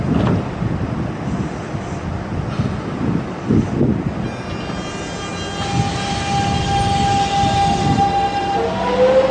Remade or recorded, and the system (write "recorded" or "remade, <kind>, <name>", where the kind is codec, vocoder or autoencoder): recorded